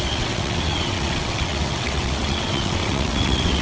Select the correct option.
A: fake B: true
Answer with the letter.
A